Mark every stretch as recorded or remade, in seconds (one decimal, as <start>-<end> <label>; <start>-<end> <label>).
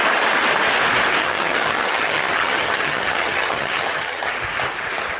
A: 0.0-1.2 recorded; 1.2-4.3 remade; 4.3-5.2 recorded